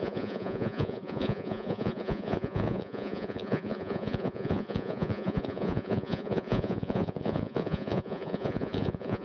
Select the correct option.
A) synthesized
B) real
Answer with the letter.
A